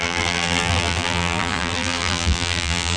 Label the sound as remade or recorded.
remade